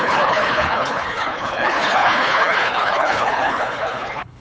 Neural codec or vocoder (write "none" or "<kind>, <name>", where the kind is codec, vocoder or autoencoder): codec, HILCodec